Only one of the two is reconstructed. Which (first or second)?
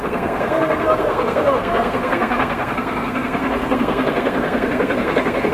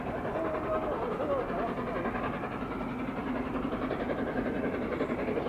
first